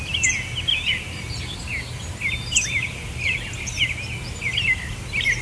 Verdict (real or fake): real